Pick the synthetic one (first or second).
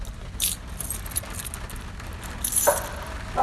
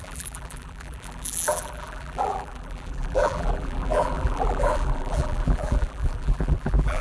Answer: second